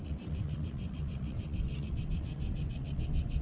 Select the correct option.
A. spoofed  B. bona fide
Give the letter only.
A